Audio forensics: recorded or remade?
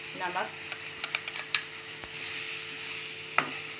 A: recorded